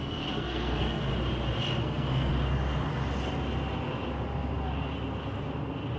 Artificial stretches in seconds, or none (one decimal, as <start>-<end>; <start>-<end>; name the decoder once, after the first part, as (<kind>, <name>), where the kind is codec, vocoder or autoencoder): 0.0-1.1 (codec, SNAC); 1.8-2.3